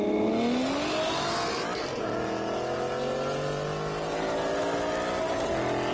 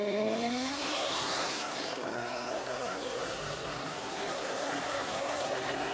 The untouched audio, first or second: first